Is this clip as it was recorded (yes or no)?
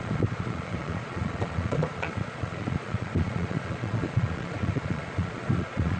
no